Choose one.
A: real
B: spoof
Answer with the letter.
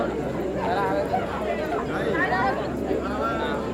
A